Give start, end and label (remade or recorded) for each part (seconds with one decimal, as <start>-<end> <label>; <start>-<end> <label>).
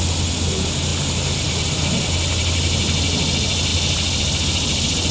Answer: 0.0-5.1 recorded